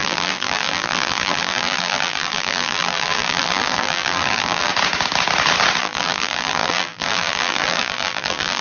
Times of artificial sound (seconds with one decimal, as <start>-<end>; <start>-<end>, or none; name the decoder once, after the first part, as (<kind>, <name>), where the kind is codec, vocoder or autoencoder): 0.0-4.7 (vocoder, BigVGAN v2); 5.8-8.6